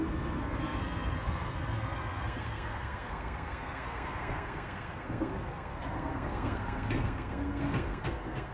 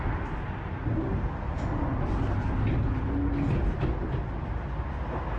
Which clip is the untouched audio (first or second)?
second